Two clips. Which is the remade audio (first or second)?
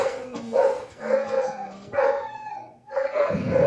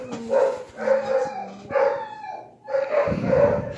first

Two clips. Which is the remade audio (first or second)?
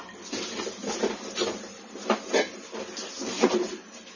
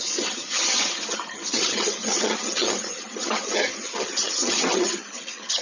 second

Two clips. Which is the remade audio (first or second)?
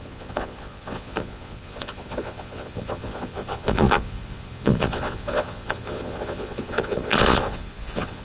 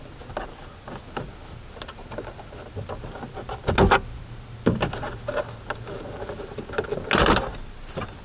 first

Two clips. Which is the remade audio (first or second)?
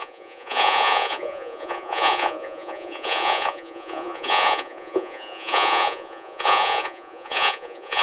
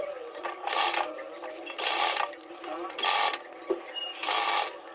first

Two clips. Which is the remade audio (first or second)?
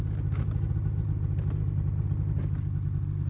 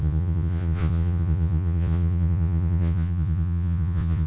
second